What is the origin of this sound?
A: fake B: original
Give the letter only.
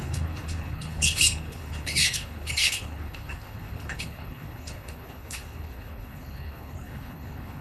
A